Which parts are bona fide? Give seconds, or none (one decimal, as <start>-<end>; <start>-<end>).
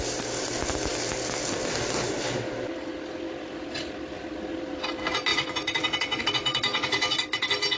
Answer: 0.0-7.8